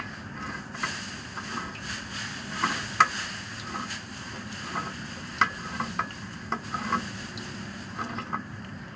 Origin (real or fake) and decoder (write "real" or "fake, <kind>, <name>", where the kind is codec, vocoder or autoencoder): real